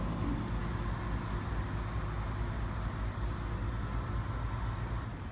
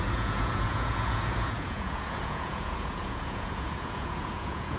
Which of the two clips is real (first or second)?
first